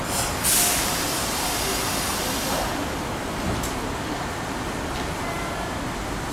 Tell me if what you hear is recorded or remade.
remade